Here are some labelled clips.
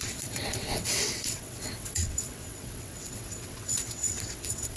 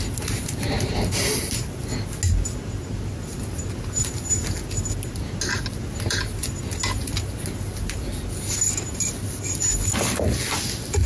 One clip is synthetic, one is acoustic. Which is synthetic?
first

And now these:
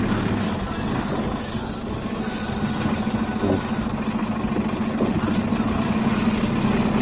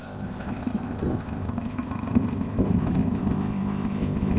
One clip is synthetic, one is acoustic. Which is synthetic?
second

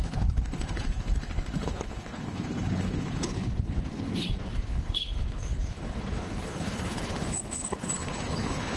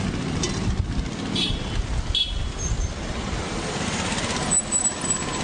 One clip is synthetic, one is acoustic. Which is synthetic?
first